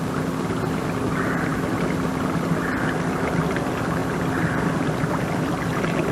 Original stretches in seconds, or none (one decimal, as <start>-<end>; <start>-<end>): 0.0-1.5; 2.7-4.0; 4.7-6.1